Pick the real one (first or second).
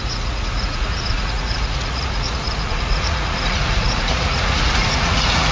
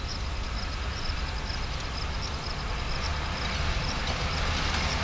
second